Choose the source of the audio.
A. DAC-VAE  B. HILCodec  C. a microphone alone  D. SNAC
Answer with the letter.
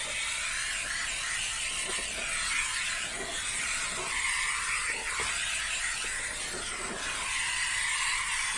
C